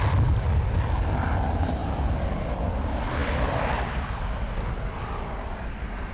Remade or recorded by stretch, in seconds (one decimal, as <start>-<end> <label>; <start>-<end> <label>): 0.0-6.1 recorded